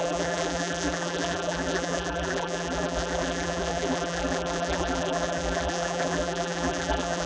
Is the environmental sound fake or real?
fake